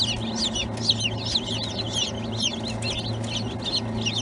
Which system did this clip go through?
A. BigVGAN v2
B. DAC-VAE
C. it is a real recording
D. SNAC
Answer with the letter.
C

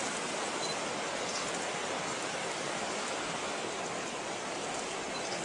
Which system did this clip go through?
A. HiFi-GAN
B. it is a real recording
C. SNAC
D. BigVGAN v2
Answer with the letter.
B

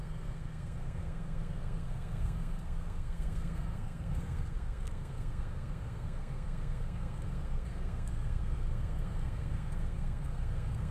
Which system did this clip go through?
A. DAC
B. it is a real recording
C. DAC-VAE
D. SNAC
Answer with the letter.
D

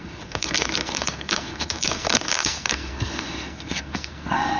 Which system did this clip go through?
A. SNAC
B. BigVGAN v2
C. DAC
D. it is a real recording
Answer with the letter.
A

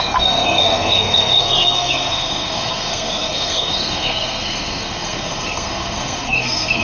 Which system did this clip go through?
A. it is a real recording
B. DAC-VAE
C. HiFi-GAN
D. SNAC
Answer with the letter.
D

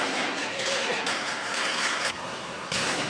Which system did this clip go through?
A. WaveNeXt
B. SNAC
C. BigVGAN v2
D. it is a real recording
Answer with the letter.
B